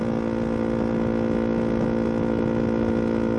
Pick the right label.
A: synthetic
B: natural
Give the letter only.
B